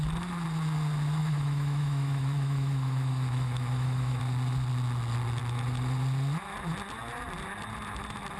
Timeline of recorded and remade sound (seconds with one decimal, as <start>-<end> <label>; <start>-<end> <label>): 0.0-1.2 recorded; 1.2-4.2 remade; 4.2-8.4 recorded